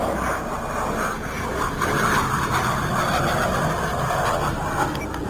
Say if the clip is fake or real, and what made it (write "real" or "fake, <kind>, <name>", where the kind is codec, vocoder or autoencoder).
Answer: real